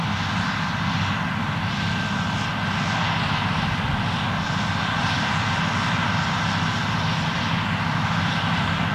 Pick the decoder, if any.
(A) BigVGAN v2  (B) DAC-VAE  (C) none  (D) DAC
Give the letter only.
C